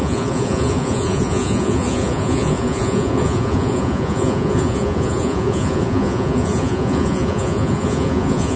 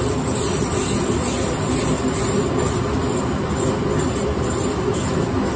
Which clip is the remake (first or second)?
first